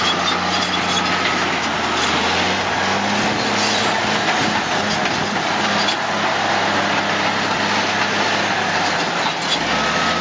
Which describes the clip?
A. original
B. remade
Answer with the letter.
A